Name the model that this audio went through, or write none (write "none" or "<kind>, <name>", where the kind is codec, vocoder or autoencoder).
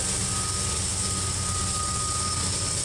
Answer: none